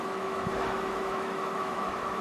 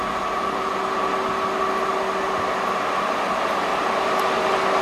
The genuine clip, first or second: second